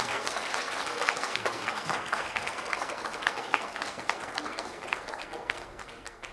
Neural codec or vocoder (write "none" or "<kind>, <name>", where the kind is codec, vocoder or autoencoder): codec, SNAC